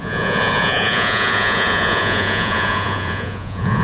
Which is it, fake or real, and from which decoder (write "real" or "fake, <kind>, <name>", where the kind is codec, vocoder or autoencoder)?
fake, vocoder, Vocos